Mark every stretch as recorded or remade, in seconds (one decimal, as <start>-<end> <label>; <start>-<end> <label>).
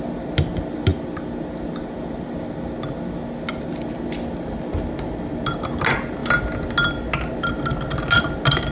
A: 0.0-8.7 recorded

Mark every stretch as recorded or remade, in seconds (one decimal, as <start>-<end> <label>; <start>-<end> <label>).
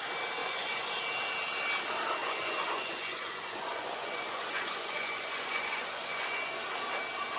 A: 0.0-0.4 recorded; 0.4-0.9 remade; 0.9-2.2 recorded; 2.2-6.6 remade; 6.6-7.4 recorded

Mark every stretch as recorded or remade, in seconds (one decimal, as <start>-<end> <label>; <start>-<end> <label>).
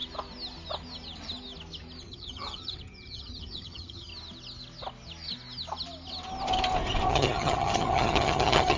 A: 0.0-2.0 recorded; 2.0-4.1 remade; 4.1-7.1 recorded; 7.1-8.8 remade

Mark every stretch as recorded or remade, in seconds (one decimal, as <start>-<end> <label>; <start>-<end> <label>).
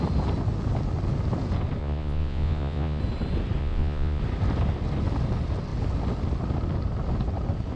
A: 0.0-1.8 recorded; 1.8-3.0 remade; 3.0-3.6 recorded; 3.6-4.2 remade; 4.2-7.8 recorded